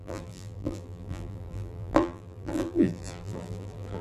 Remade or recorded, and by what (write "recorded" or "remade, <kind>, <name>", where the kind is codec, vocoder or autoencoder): remade, vocoder, BigVGAN v2